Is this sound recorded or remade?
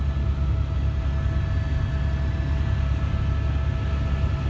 recorded